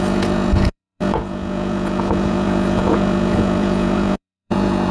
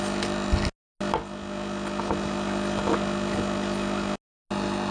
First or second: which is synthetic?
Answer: first